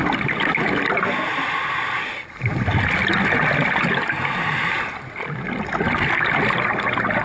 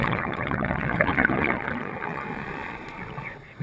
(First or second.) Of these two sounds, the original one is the first